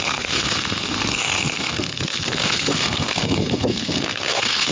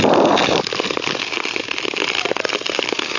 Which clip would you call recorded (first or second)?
second